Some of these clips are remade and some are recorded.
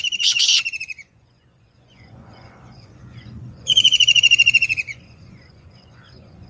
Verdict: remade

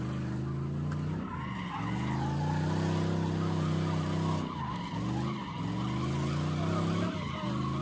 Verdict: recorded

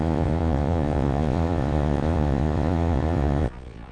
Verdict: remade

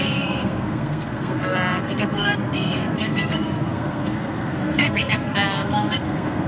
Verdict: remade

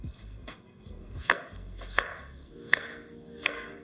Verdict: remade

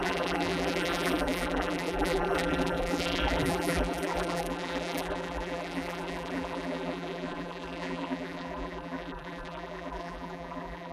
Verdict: remade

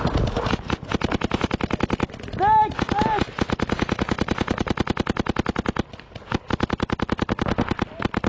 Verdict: recorded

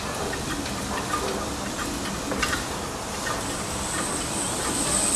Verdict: recorded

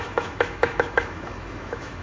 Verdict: remade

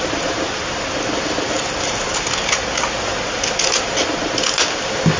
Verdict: recorded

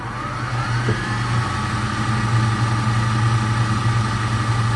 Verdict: recorded